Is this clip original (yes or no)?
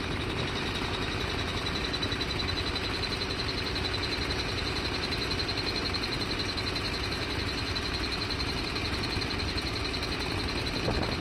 yes